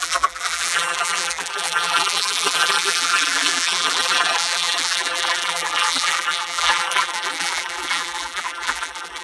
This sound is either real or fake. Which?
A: fake